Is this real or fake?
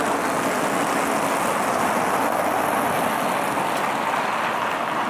real